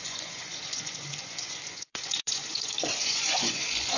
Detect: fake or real fake